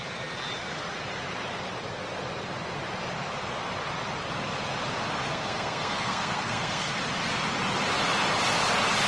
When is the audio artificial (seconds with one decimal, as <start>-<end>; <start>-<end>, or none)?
5.2-6.9